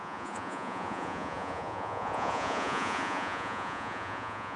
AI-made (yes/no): yes